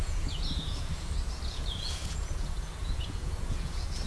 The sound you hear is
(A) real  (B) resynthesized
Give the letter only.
B